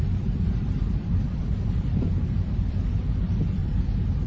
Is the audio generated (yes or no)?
yes